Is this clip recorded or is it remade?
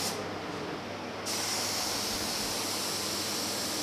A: recorded